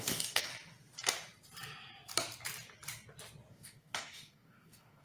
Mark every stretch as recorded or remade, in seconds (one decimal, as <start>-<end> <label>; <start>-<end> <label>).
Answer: 0.0-0.5 remade; 0.5-3.5 recorded; 3.5-5.0 remade